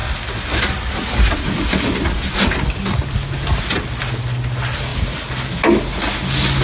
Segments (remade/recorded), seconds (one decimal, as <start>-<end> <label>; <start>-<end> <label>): 0.0-6.6 recorded